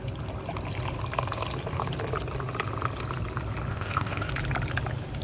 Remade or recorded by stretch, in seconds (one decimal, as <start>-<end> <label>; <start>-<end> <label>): 0.0-3.7 recorded; 3.7-4.3 remade; 4.3-5.2 recorded